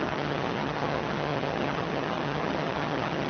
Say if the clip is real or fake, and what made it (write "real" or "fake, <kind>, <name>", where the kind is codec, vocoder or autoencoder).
fake, vocoder, HiFi-GAN